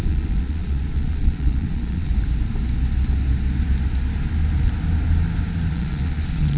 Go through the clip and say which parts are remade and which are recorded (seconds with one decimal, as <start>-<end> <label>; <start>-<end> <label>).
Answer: 0.0-2.1 remade; 2.1-5.7 recorded; 5.7-6.6 remade